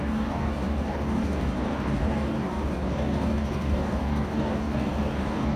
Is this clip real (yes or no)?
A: no